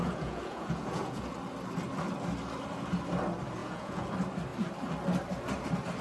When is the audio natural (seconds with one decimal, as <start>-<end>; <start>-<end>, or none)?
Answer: 1.2-3.6; 4.1-6.0